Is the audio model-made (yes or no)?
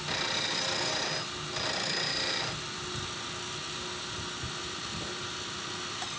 no